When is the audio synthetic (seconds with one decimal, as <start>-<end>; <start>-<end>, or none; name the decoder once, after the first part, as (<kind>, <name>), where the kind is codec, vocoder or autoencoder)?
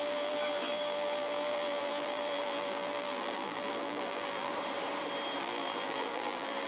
0.0-4.5 (vocoder, BigVGAN v2); 5.4-6.7